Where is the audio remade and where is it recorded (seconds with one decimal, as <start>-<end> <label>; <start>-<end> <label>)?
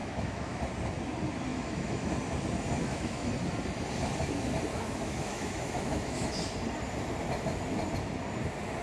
0.0-0.6 remade; 0.6-1.5 recorded; 1.5-2.1 remade; 2.1-2.8 recorded; 2.8-3.3 remade; 3.3-4.7 recorded; 4.7-6.4 remade; 6.4-8.8 recorded